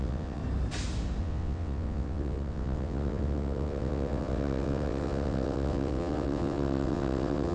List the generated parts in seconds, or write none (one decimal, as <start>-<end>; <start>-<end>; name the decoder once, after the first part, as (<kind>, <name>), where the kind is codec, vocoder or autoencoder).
0.0-0.4 (vocoder, WaveNeXt); 1.2-7.5